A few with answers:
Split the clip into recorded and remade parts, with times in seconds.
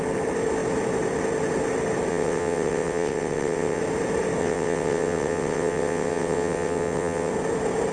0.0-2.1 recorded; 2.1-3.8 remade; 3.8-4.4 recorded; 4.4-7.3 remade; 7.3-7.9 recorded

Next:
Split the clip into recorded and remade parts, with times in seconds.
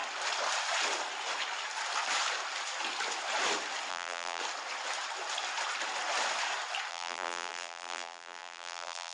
0.0-3.9 recorded; 3.9-4.4 remade; 4.4-6.9 recorded; 6.9-9.1 remade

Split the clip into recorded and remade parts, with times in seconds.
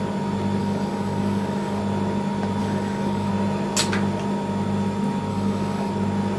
0.0-0.6 recorded; 0.6-1.8 remade; 1.8-2.6 recorded; 2.6-3.3 remade; 3.3-5.3 recorded; 5.3-5.9 remade; 5.9-6.4 recorded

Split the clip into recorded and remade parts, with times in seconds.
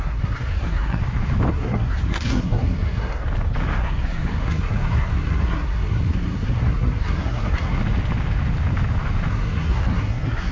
0.0-1.0 remade; 1.0-1.5 recorded; 1.5-3.2 remade; 3.2-3.8 recorded; 3.8-7.8 remade; 7.8-9.3 recorded; 9.3-10.5 remade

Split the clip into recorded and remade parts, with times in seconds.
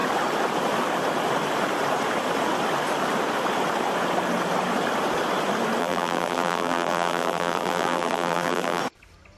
0.0-5.8 recorded; 5.8-8.8 remade; 8.8-9.4 recorded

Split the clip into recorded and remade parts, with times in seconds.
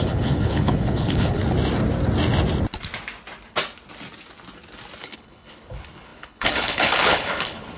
0.0-1.4 remade; 1.4-5.0 recorded; 5.0-7.8 remade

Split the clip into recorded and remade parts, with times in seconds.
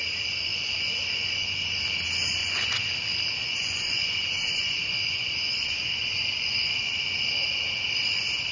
0.0-0.5 recorded; 0.5-1.8 remade; 1.8-2.4 recorded; 2.4-2.9 remade; 2.9-3.4 recorded; 3.4-6.9 remade; 6.9-8.5 recorded